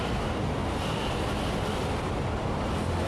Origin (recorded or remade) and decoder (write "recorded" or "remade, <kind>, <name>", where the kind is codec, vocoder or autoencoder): recorded